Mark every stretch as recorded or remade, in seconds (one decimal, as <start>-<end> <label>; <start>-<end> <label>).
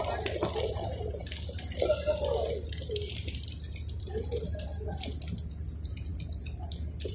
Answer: 0.0-7.1 recorded